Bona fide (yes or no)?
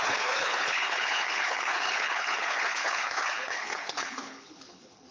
no